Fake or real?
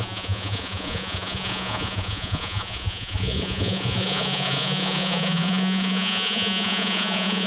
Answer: fake